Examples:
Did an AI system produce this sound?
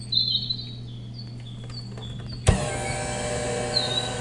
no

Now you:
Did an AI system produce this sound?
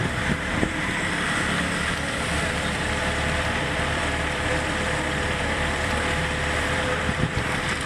yes